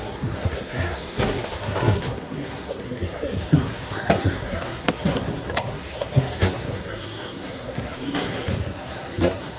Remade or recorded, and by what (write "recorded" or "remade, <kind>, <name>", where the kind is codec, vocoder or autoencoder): remade, codec, SNAC